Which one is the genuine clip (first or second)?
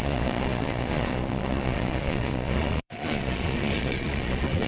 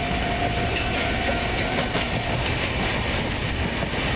second